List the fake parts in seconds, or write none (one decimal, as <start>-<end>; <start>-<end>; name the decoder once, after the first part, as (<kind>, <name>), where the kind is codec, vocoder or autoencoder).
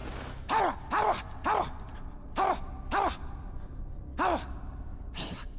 1.9-2.7 (vocoder, BigVGAN v2); 4.9-5.6